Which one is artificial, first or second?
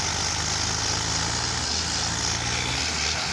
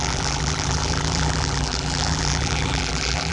second